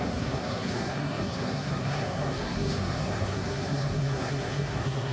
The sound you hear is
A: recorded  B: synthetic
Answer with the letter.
B